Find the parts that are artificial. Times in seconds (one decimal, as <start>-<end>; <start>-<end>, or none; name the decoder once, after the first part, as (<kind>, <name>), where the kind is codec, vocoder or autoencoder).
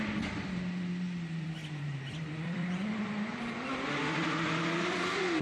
1.6-4.0 (vocoder, BigVGAN v2)